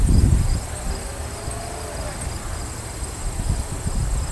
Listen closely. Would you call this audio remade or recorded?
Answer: recorded